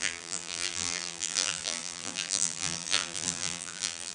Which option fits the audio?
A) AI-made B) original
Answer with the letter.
A